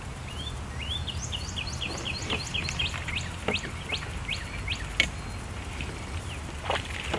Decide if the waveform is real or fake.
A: real